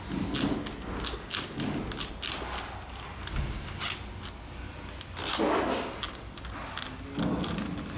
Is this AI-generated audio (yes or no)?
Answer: no